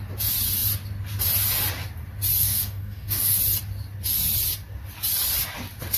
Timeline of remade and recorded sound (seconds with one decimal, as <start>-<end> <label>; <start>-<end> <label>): 0.0-2.4 recorded; 2.4-3.4 remade; 3.4-6.0 recorded